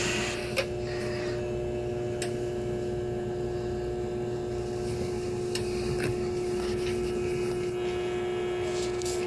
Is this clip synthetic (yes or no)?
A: no